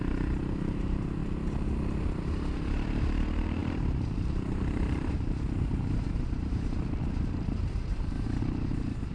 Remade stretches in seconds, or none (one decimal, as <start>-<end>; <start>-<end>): 0.0-1.2; 2.2-9.1